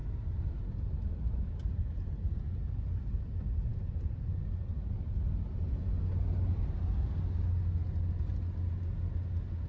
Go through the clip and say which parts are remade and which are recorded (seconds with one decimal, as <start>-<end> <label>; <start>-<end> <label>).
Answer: 0.0-9.7 recorded